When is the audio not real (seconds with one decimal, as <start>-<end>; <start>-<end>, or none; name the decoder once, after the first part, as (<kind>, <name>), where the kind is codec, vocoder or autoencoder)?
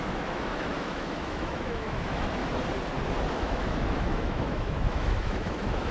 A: 0.0-2.4 (autoencoder, DAC-VAE); 3.3-5.9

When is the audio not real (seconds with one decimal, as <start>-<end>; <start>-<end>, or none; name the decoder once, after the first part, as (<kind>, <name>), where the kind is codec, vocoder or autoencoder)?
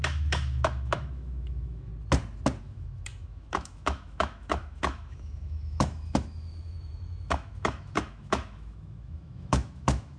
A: 0.0-1.9 (autoencoder, DAC-VAE); 2.6-10.2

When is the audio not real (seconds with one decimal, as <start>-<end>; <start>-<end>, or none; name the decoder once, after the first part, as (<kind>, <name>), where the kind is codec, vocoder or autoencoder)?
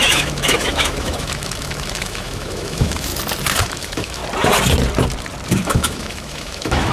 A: 0.0-3.1 (autoencoder, DAC-VAE); 3.6-4.2; 5.5-6.9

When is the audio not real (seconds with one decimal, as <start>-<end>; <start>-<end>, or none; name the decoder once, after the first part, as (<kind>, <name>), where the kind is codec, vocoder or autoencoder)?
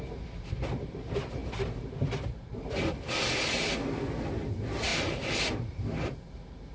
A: none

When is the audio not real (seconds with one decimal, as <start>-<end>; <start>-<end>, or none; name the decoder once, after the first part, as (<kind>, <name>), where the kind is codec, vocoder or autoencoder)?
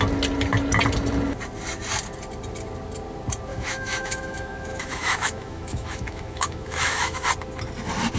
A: 3.5-7.3 (autoencoder, DAC-VAE)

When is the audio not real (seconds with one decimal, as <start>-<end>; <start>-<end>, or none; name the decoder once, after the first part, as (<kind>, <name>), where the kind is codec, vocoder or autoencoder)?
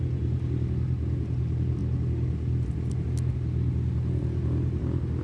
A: none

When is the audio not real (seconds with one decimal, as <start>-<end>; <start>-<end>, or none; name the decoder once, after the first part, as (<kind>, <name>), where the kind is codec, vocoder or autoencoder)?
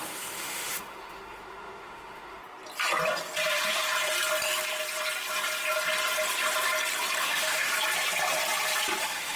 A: 0.0-2.4 (autoencoder, DAC-VAE); 7.2-7.7; 9.0-9.4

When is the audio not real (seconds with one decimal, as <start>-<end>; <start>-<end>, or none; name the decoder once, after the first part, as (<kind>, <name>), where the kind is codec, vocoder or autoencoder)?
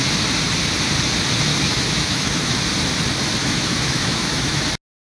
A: 1.5-2.6 (autoencoder, DAC-VAE); 3.4-4.6